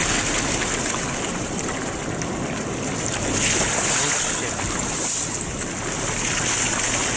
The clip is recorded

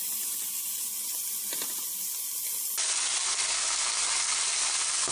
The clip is recorded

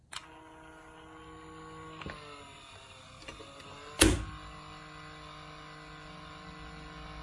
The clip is recorded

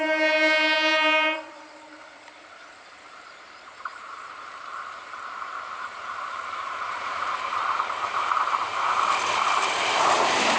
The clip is remade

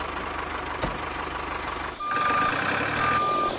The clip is recorded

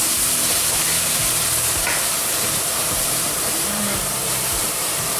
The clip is remade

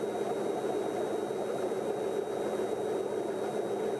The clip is recorded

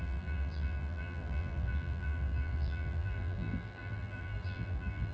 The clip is remade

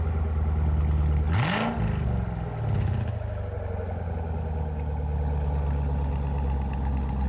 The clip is recorded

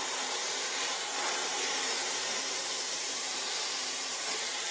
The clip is remade